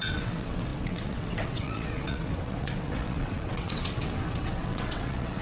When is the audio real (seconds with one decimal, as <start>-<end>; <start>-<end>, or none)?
none